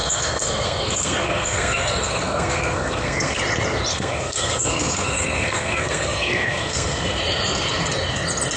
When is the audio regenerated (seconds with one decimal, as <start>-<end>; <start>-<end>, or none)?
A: 0.0-3.4; 3.9-7.2